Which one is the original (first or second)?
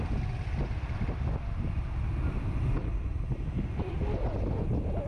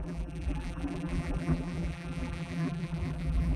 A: first